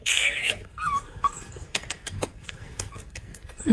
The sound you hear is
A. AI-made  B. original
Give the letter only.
A